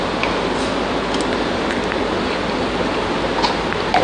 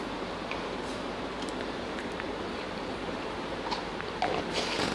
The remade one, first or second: second